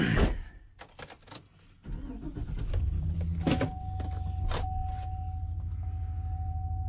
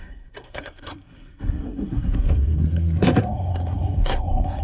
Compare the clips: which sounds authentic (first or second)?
first